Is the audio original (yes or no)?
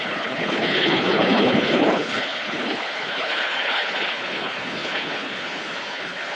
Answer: no